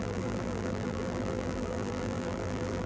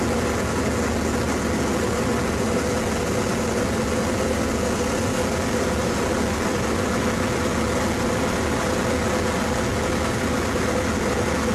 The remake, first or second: first